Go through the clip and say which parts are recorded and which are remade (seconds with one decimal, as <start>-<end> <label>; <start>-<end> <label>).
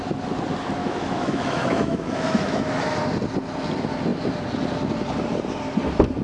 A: 0.0-0.8 recorded; 0.8-3.0 remade; 3.0-6.2 recorded